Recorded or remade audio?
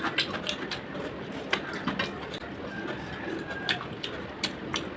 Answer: recorded